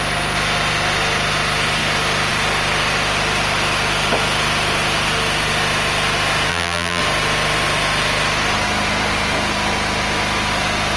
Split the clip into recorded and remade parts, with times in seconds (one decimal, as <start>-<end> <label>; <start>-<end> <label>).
0.0-6.5 recorded; 6.5-7.0 remade; 7.0-11.0 recorded